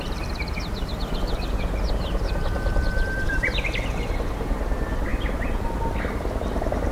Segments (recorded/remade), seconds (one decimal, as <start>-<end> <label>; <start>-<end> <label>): 0.0-6.9 recorded